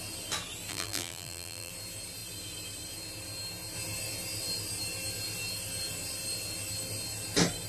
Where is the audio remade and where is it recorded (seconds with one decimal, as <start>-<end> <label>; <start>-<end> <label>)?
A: 0.0-0.7 recorded; 0.7-1.7 remade; 1.7-7.7 recorded